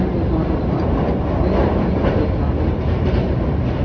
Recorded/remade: recorded